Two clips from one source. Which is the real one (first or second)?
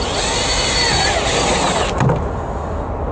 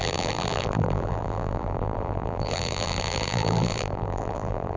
first